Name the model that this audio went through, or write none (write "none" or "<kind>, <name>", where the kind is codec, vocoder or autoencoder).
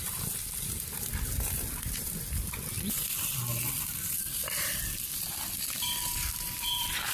vocoder, BigVGAN v2